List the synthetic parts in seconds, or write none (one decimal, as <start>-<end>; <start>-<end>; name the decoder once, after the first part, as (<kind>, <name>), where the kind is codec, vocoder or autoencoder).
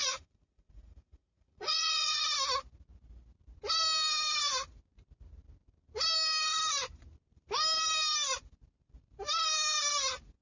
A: 0.0-2.2 (vocoder, Vocos)